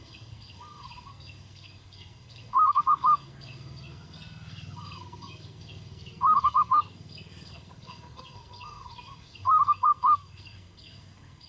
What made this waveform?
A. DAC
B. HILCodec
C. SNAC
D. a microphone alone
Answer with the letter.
C